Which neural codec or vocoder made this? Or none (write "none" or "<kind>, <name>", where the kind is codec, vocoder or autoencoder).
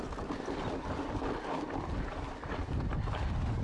none